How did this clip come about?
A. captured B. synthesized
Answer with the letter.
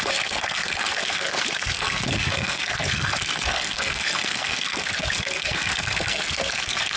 B